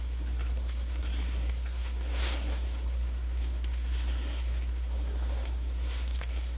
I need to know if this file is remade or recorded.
remade